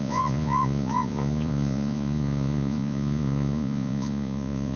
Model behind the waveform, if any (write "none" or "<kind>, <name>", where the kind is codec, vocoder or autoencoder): vocoder, Vocos